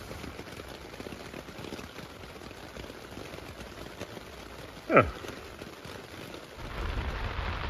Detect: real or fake real